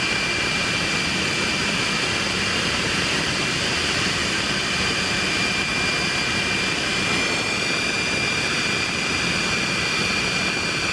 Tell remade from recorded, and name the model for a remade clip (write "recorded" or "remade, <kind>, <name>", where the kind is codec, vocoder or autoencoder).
recorded